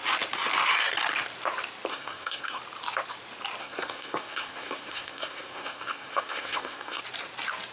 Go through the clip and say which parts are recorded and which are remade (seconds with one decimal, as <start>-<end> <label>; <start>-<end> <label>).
0.0-1.9 recorded; 1.9-2.6 remade; 2.6-3.6 recorded; 3.6-7.0 remade; 7.0-7.7 recorded

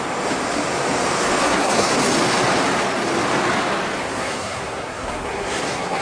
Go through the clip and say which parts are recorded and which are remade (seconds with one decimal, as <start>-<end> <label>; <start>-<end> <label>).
0.0-1.4 recorded; 1.4-1.9 remade; 1.9-4.1 recorded; 4.1-6.0 remade

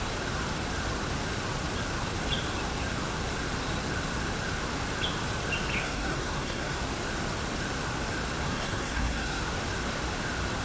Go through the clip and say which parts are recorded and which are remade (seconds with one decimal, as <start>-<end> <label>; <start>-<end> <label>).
0.0-5.8 recorded; 5.8-6.8 remade; 6.8-8.4 recorded; 8.4-9.4 remade; 9.4-10.6 recorded